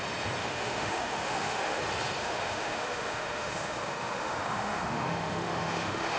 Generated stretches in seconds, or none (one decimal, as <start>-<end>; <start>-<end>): 0.4-1.8; 2.2-6.2